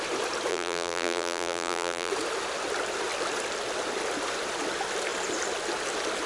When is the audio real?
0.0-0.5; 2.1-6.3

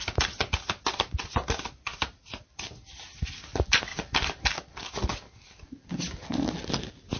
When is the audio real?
0.0-1.9; 2.7-3.9; 4.4-7.2